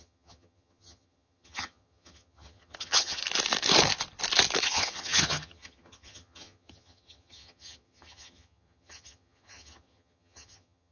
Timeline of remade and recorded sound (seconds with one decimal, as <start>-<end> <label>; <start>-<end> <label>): 0.0-3.2 remade; 3.2-4.6 recorded; 4.6-10.9 remade